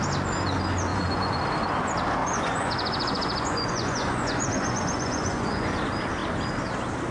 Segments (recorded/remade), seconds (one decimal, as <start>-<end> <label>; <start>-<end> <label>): 0.0-0.9 recorded; 0.9-1.4 remade; 1.4-2.2 recorded; 2.2-5.8 remade; 5.8-7.1 recorded